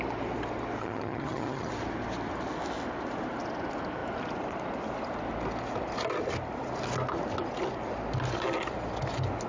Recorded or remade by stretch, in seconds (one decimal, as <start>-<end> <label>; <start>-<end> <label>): 0.0-0.8 recorded; 0.8-1.7 remade; 1.7-9.5 recorded